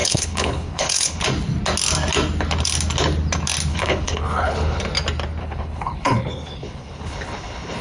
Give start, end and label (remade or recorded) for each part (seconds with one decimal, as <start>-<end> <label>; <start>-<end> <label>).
0.0-1.2 remade; 1.2-3.7 recorded; 3.7-4.8 remade; 4.8-5.4 recorded; 5.4-7.8 remade